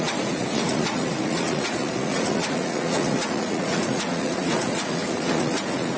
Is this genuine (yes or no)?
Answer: no